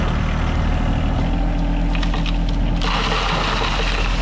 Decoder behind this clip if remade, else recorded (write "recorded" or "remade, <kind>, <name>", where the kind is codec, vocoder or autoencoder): recorded